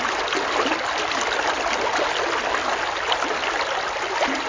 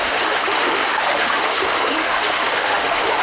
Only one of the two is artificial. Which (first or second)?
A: second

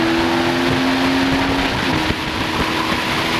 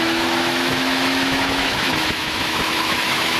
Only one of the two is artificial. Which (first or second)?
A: second